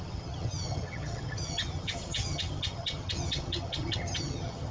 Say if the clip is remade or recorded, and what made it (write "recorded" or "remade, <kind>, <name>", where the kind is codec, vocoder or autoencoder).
remade, vocoder, HiFi-GAN